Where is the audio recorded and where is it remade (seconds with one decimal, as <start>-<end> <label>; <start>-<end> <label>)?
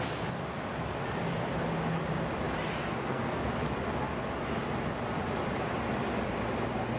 0.0-2.8 recorded; 2.8-3.4 remade; 3.4-7.0 recorded